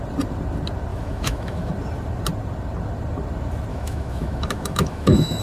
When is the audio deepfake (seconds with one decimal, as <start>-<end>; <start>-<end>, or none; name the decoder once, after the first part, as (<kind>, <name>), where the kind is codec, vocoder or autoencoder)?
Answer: 0.9-1.7 (autoencoder, DAC-VAE); 3.7-5.4